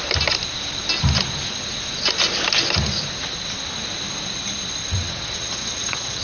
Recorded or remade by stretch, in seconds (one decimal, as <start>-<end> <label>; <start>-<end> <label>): 0.0-4.9 recorded; 4.9-6.2 remade